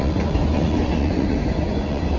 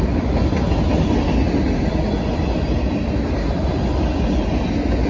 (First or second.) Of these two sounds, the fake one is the first